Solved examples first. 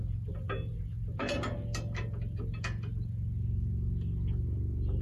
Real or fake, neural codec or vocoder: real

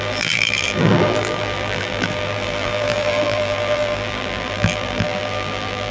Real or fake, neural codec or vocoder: fake, vocoder, BigVGAN v2